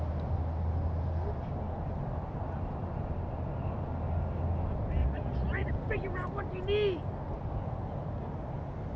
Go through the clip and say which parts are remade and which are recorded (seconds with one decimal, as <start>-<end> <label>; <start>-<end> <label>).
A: 0.0-5.0 recorded; 5.0-5.7 remade; 5.7-9.0 recorded